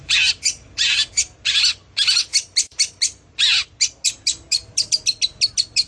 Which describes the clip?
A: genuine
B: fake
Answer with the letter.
A